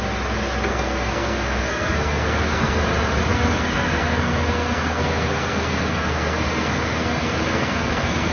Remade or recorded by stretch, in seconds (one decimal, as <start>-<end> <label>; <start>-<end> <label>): 0.0-0.7 recorded; 0.7-2.8 remade; 2.8-3.3 recorded; 3.3-8.3 remade